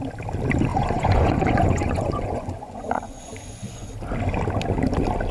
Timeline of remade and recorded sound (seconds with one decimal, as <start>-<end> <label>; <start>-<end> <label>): 0.0-0.7 recorded; 0.7-3.9 remade; 3.9-5.3 recorded